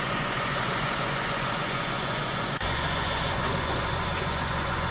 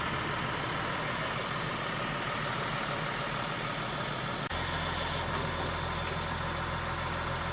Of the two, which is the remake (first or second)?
first